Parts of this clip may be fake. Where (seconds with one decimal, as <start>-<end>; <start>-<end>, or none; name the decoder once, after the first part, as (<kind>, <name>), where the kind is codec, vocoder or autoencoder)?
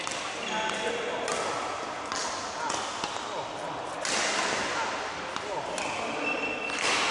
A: none